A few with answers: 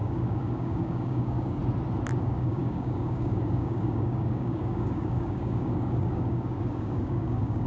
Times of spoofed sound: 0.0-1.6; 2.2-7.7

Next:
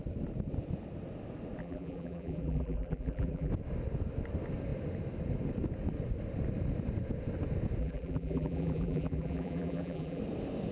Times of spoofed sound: 1.6-3.5; 7.8-10.2

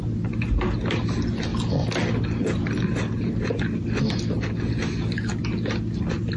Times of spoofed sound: none

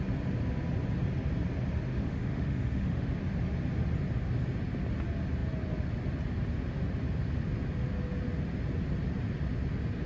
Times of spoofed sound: 1.9-3.1

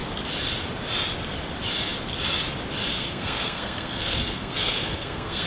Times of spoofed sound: 2.9-5.5